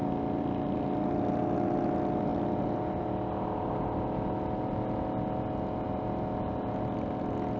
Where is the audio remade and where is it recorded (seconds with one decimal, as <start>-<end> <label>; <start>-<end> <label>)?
0.0-7.6 recorded